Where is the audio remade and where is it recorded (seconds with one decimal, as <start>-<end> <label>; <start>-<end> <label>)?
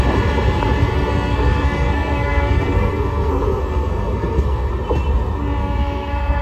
0.0-0.9 recorded; 0.9-4.7 remade; 4.7-5.6 recorded; 5.6-6.4 remade